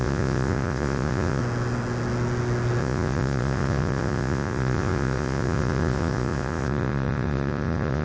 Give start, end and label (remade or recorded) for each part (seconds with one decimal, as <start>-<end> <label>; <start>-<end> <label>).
0.0-1.4 remade; 1.4-2.8 recorded; 2.8-8.0 remade

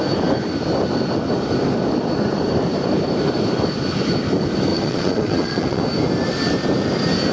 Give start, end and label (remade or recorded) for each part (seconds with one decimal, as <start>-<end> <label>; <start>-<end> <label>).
0.0-4.7 recorded; 4.7-5.8 remade; 5.8-7.3 recorded

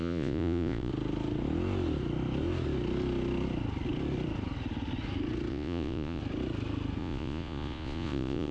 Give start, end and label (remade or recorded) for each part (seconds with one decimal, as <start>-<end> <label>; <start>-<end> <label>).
0.0-0.9 remade; 0.9-5.5 recorded; 5.5-6.2 remade; 6.2-7.0 recorded; 7.0-8.5 remade

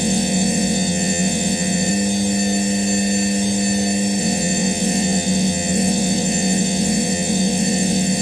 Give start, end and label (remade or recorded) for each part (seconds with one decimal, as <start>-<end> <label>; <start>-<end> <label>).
0.0-1.9 remade; 1.9-4.2 recorded; 4.2-8.2 remade